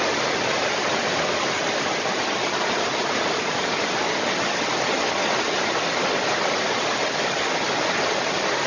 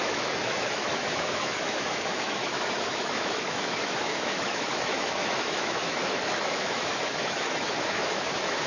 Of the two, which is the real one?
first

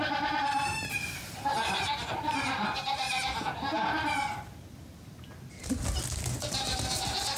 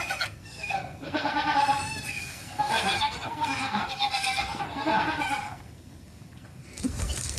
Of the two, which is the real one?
first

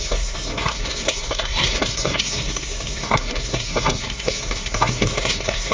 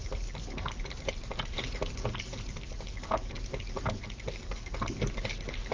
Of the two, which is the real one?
second